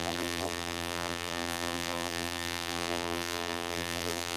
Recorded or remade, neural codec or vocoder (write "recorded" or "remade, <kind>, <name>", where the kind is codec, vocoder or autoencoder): remade, vocoder, BigVGAN v2